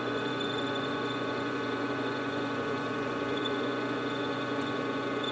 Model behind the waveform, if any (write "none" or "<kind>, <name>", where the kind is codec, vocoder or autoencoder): vocoder, Vocos